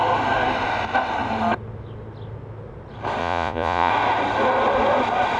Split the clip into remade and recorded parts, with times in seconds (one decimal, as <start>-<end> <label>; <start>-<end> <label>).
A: 0.0-3.2 recorded; 3.2-3.9 remade; 3.9-5.4 recorded